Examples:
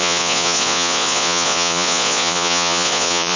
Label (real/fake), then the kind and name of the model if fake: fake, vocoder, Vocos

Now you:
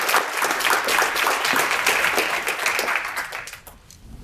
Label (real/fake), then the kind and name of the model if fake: real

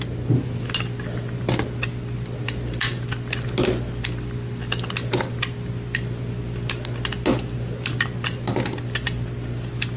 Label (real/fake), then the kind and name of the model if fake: real